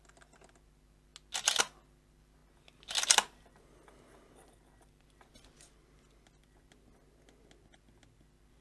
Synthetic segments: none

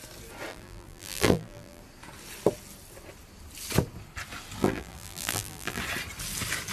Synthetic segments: 0.5-1.8; 4.6-5.8

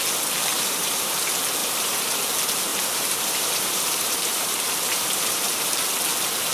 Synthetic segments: 0.5-1.2; 1.6-2.1; 2.7-5.9